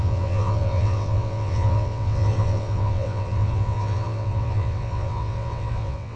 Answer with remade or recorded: remade